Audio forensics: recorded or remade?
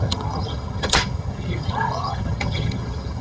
remade